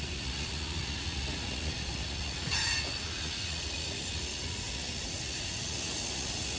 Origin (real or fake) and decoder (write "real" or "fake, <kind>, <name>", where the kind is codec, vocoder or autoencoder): fake, vocoder, Vocos